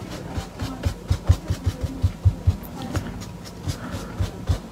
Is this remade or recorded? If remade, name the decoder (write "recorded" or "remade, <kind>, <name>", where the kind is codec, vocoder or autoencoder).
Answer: recorded